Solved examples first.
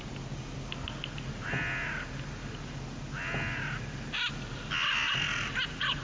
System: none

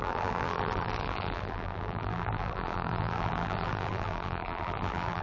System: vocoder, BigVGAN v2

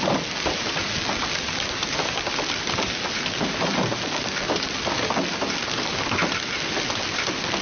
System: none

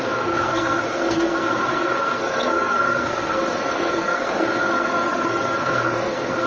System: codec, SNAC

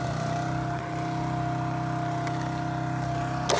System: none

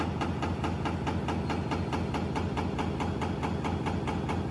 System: none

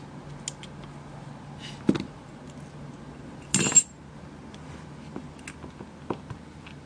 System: none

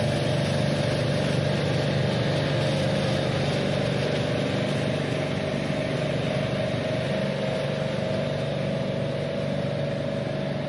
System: none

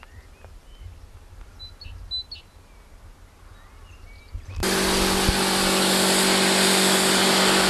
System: none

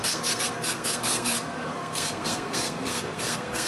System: codec, SNAC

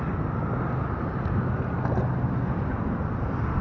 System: none